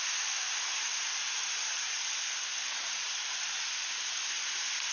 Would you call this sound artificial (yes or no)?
no